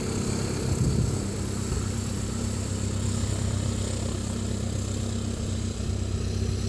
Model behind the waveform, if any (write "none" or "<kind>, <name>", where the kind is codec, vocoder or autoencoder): none